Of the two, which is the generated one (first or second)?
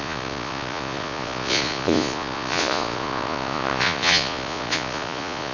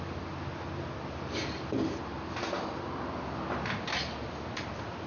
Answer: first